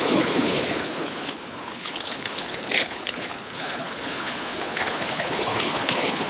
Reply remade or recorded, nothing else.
remade